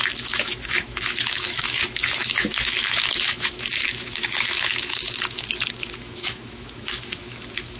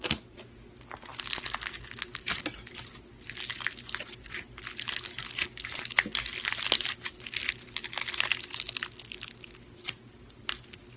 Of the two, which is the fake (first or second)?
first